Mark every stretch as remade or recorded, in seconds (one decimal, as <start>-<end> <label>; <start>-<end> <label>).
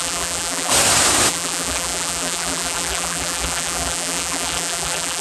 0.0-0.7 remade; 0.7-1.3 recorded; 1.3-5.2 remade